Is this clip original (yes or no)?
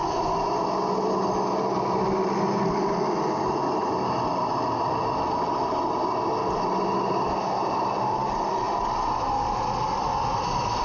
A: yes